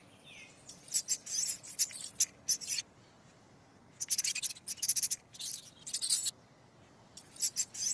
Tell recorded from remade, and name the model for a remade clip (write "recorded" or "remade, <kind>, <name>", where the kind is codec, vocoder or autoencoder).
recorded